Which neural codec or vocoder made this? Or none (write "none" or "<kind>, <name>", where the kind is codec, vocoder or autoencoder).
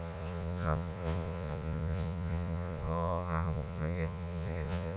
vocoder, Vocos